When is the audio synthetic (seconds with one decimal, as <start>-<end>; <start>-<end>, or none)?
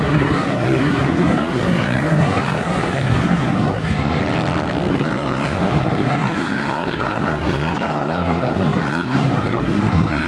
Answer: 0.0-4.2; 4.9-10.3